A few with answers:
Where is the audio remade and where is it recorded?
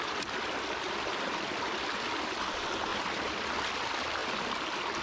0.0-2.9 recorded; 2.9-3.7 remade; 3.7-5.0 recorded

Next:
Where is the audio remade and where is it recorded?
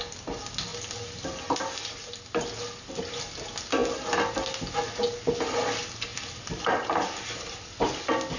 0.0-0.7 recorded; 0.7-1.4 remade; 1.4-6.1 recorded; 6.1-7.7 remade; 7.7-8.4 recorded